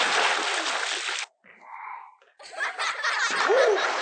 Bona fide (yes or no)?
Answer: yes